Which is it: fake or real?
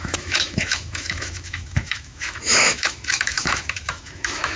fake